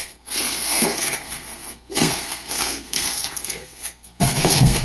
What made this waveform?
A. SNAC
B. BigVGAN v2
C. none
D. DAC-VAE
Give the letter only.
A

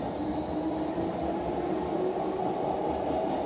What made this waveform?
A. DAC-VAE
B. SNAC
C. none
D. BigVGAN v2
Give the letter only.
C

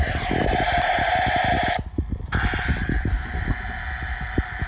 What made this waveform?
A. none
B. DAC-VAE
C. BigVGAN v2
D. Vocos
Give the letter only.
A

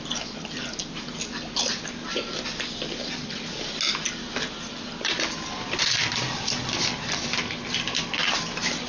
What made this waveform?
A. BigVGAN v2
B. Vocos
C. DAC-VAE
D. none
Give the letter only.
D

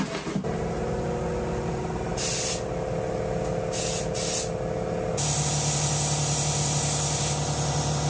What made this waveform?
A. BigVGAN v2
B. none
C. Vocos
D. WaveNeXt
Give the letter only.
B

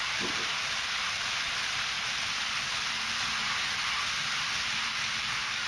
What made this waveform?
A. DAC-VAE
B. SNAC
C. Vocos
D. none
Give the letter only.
D